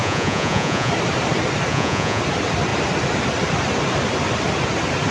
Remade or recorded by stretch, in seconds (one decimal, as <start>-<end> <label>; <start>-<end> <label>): 0.0-0.9 remade; 0.9-1.7 recorded; 1.7-2.2 remade; 2.2-5.1 recorded